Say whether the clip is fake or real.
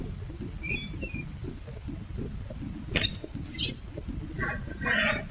real